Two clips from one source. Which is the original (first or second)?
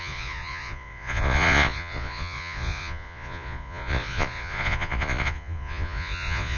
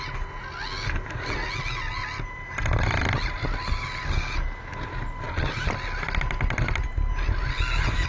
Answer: second